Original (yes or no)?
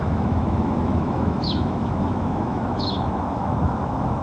no